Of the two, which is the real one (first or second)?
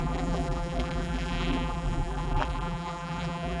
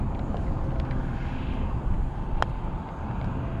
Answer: second